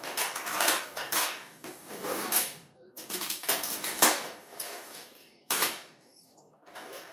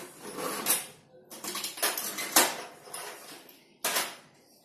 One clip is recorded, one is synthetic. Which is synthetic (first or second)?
first